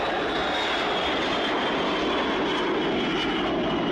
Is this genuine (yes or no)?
yes